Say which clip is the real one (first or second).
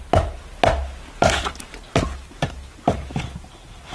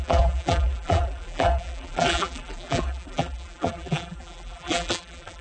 first